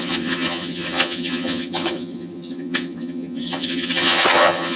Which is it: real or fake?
fake